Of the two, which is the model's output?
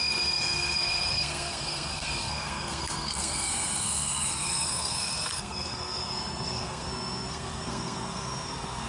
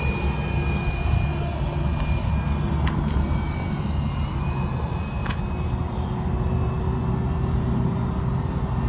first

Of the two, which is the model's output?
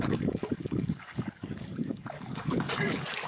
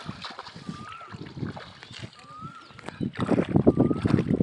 first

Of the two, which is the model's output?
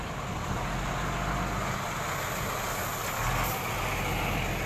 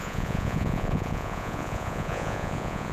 second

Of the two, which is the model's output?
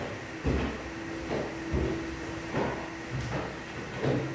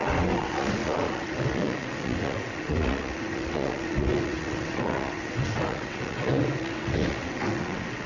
second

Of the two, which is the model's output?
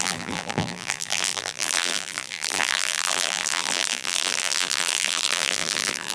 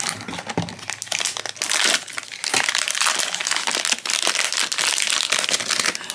first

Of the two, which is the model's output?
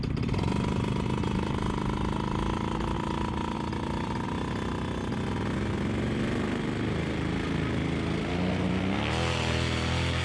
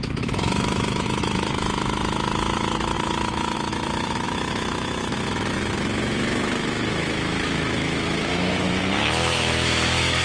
second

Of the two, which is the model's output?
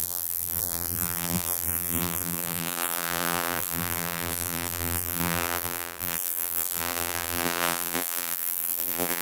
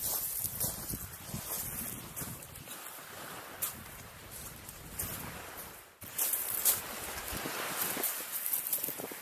first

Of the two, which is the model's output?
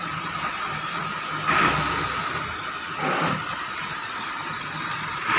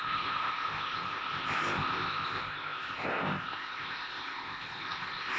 second